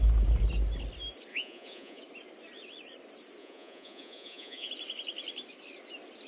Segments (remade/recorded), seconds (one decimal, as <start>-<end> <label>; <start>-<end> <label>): 0.0-1.3 recorded; 1.3-2.0 remade; 2.0-3.4 recorded; 3.4-4.7 remade; 4.7-6.3 recorded